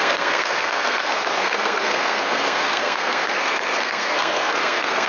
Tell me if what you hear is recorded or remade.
remade